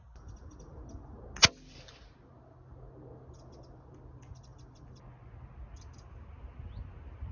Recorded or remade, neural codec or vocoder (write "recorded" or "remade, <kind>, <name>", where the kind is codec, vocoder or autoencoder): recorded